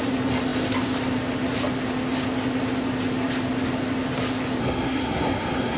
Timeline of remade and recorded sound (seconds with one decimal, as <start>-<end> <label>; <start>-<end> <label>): 0.0-4.6 recorded; 4.6-5.8 remade